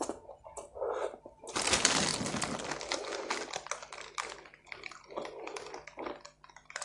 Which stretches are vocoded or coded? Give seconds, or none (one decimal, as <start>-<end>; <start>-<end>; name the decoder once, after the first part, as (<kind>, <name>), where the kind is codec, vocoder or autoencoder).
none